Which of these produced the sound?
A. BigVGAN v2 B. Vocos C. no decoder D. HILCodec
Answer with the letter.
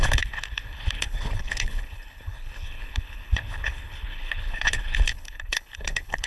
D